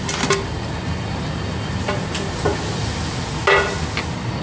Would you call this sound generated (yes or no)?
no